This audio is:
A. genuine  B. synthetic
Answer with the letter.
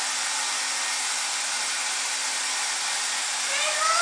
A